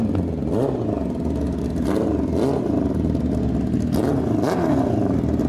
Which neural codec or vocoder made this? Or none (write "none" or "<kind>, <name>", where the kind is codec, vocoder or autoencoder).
none